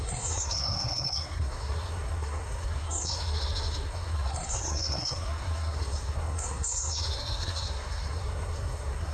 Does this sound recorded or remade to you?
remade